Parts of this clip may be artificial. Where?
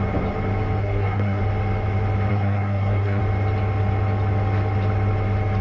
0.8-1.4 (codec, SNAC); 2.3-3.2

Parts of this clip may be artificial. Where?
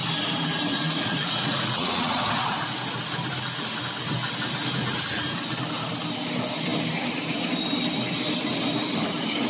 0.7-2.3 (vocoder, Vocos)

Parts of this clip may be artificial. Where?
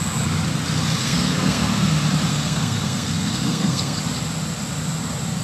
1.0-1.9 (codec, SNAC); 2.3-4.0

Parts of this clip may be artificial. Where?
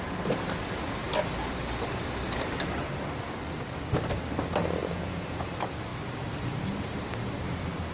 4.8-5.5 (vocoder, Vocos)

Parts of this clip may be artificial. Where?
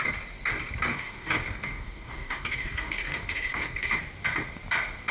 0.9-4.0 (codec, DAC)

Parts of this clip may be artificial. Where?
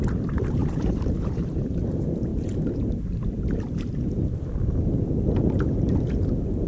0.6-1.8 (vocoder, BigVGAN v2)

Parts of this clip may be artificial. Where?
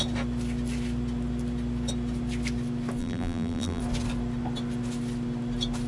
3.0-3.8 (vocoder, BigVGAN v2)